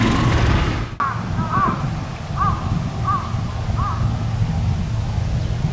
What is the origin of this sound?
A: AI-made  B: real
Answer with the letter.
B